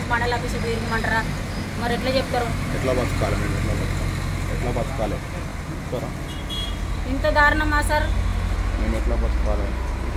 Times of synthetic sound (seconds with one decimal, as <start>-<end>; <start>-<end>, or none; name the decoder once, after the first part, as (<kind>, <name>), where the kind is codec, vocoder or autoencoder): none